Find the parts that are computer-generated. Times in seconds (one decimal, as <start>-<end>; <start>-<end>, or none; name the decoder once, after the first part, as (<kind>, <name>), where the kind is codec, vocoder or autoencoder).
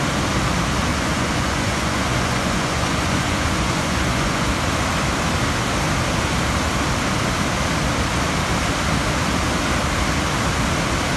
0.9-4.5 (vocoder, Vocos)